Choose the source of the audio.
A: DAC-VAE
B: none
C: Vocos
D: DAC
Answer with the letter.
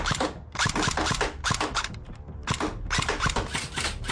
B